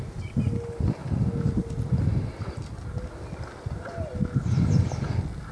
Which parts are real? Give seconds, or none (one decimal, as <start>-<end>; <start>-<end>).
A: 0.0-5.5